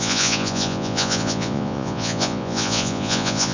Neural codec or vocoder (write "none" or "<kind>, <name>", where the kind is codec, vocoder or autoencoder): vocoder, Vocos